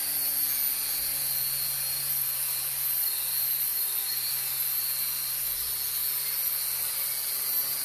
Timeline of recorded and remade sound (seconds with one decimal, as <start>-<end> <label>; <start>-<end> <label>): 0.0-7.8 recorded